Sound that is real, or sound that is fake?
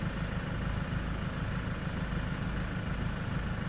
real